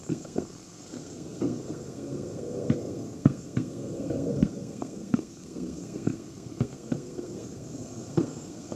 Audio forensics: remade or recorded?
remade